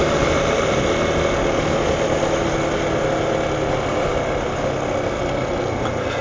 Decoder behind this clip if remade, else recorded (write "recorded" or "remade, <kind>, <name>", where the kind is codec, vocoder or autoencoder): recorded